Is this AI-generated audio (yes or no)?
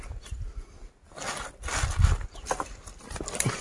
no